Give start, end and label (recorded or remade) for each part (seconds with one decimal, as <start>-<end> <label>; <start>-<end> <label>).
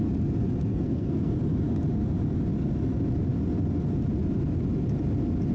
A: 0.0-0.7 recorded; 0.7-1.3 remade; 1.3-5.5 recorded